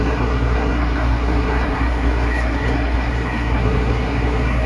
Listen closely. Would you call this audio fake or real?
fake